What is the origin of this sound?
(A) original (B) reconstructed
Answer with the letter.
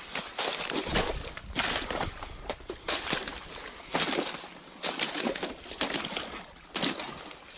A